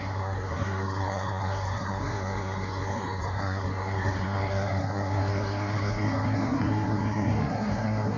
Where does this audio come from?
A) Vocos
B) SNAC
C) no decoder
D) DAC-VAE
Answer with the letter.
B